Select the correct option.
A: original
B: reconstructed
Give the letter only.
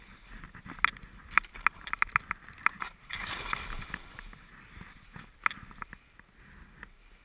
A